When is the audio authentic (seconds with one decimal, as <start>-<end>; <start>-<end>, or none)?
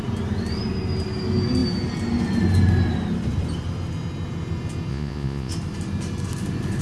0.0-4.9; 5.5-6.8